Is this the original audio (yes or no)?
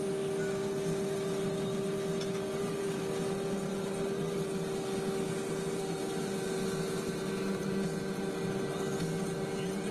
yes